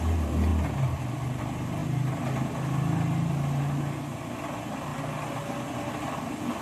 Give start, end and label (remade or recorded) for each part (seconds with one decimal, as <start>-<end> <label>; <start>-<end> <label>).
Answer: 0.0-6.6 recorded